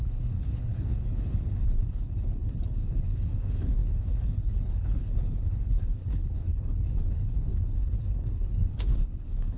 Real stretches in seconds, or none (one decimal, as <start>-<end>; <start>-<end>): none